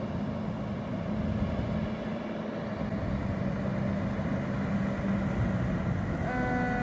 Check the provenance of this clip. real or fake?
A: real